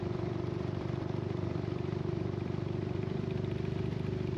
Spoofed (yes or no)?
yes